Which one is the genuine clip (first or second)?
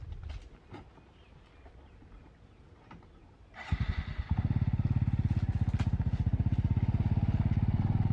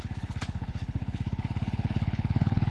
first